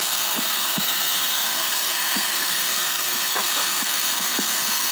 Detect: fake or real fake